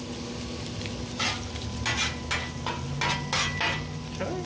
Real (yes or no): yes